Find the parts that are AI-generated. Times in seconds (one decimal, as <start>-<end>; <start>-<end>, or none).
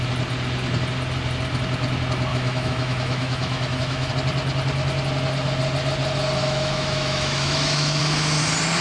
2.3-4.1; 6.4-8.0